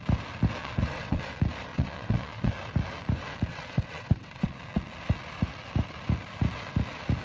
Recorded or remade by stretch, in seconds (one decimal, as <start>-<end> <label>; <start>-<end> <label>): 0.0-0.6 recorded; 0.6-1.2 remade; 1.2-1.7 recorded; 1.7-2.5 remade; 2.5-3.5 recorded; 3.5-4.6 remade; 4.6-7.2 recorded